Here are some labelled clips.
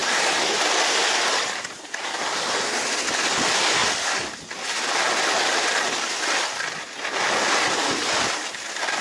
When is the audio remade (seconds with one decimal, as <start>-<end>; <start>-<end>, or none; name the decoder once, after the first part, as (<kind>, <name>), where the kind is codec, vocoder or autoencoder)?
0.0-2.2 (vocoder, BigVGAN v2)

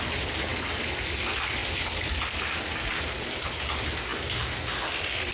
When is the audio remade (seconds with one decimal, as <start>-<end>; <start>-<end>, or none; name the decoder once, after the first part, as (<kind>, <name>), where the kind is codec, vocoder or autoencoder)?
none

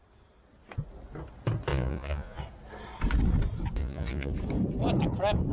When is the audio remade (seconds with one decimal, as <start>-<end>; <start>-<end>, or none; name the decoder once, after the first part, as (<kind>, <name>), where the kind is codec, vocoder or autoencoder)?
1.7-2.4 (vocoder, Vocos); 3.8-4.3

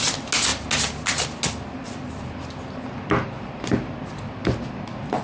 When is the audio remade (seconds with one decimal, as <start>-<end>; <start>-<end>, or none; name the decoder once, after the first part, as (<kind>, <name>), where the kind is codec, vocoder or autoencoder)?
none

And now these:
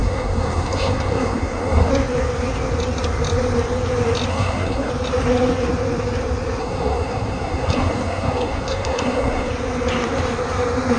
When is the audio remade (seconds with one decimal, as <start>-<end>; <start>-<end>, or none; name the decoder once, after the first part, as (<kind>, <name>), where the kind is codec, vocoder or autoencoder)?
0.0-1.9 (codec, SNAC); 4.3-4.9; 6.6-9.5

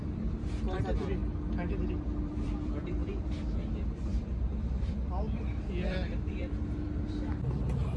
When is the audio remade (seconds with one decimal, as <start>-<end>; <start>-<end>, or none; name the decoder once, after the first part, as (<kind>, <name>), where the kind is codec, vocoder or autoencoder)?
0.0-1.2 (vocoder, BigVGAN v2); 1.9-8.0

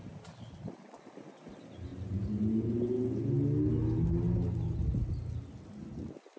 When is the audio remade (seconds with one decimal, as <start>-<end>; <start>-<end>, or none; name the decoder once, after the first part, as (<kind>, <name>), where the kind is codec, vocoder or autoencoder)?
none

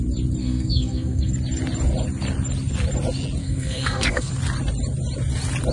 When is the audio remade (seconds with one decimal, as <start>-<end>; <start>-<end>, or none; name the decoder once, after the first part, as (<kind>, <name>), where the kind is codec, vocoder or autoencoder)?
0.4-1.3 (codec, SNAC); 3.4-4.3